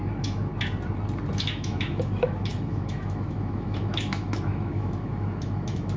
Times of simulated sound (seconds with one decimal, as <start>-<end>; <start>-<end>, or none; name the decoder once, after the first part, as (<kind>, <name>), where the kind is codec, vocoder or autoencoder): 0.0-0.5 (autoencoder, DAC-VAE); 1.3-6.0